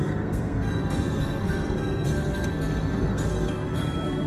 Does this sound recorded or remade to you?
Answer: remade